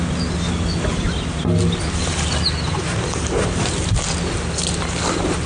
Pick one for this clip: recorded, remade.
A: recorded